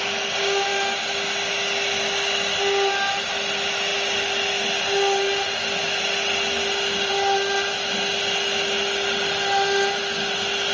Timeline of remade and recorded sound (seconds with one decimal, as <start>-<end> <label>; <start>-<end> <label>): 0.0-10.7 recorded